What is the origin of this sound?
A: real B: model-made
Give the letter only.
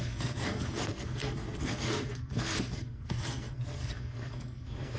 B